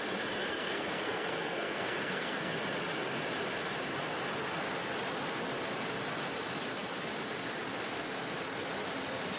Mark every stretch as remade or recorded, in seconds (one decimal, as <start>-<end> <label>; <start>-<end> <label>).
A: 0.0-0.4 recorded; 0.4-2.6 remade; 2.6-9.4 recorded